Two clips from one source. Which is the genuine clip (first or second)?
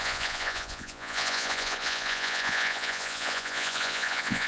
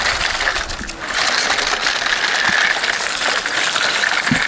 second